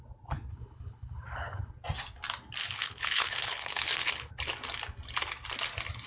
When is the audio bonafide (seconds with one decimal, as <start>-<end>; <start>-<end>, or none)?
0.0-0.5; 1.7-2.6; 4.3-6.1

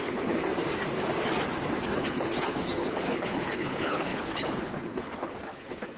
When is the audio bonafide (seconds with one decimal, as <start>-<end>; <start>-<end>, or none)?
0.5-1.8

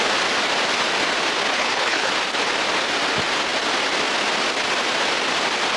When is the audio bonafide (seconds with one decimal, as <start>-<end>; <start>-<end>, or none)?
0.0-1.5; 2.1-5.8

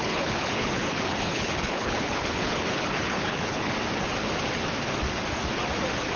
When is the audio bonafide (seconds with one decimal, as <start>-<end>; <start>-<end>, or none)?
3.7-6.2

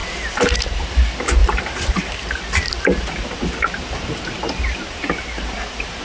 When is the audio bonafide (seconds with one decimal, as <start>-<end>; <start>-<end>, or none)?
0.0-6.0

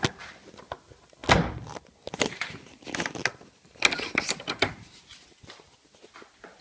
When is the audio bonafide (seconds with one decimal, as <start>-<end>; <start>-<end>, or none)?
0.0-6.6

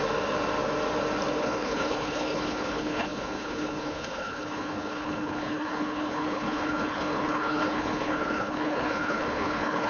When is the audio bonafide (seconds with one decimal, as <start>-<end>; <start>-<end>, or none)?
0.0-1.4